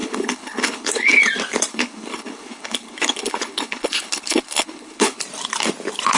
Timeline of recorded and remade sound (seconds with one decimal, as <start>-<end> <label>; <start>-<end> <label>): 0.0-1.2 remade; 1.2-1.7 recorded; 1.7-5.2 remade; 5.2-6.2 recorded